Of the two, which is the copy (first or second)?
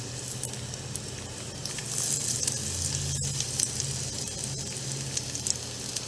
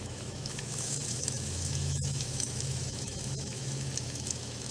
second